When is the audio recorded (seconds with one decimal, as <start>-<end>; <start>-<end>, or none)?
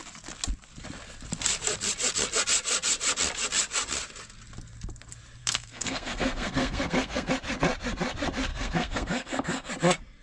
0.0-5.4; 7.3-8.5; 9.7-10.2